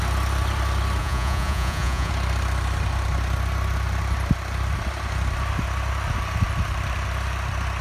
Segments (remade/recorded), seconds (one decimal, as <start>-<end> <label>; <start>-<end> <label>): 0.0-1.0 recorded; 1.0-2.1 remade; 2.1-7.8 recorded